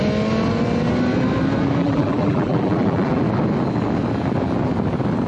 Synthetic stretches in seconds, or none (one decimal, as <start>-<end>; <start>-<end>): 1.8-3.2